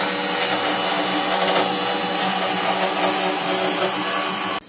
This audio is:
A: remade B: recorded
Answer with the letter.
B